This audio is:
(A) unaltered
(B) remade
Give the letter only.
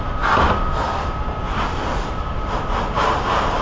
A